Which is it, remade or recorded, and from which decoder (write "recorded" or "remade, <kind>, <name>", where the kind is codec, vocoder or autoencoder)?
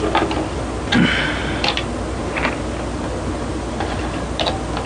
remade, vocoder, BigVGAN v2